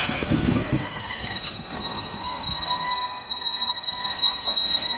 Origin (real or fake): fake